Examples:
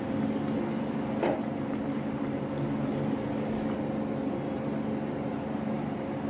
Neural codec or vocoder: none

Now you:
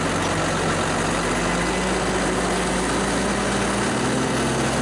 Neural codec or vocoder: none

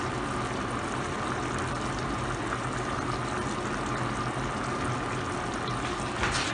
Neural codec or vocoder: none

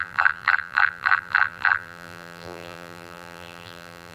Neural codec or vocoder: vocoder, BigVGAN v2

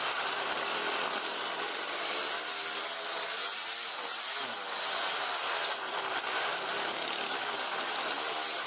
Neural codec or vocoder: none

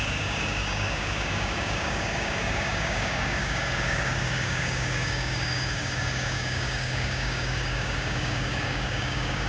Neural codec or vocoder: codec, DAC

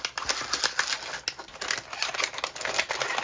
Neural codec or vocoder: none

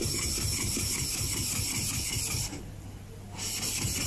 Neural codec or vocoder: none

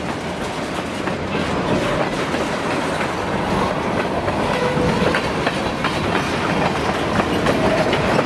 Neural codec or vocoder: none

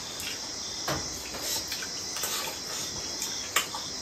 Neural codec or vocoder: none